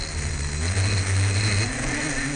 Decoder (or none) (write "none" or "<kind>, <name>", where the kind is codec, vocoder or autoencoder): none